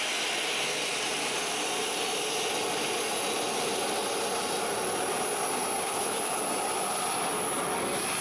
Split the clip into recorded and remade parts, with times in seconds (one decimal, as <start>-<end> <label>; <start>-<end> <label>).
0.0-5.8 recorded; 5.8-6.4 remade; 6.4-8.2 recorded

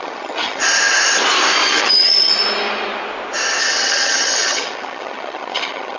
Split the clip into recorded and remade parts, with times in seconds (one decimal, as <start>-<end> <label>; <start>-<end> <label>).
0.0-0.6 remade; 0.6-1.7 recorded; 1.7-2.3 remade; 2.3-3.6 recorded; 3.6-6.0 remade